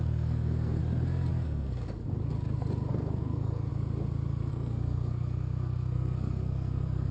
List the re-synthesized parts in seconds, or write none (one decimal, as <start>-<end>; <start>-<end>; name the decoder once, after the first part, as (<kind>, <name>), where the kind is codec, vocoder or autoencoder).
0.0-0.8 (codec, SNAC); 1.3-2.0; 2.9-3.7; 4.5-7.1